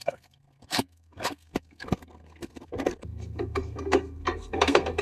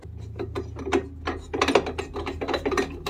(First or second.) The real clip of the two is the second